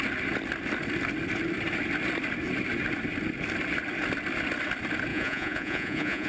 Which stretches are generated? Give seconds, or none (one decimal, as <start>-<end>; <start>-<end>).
5.1-6.3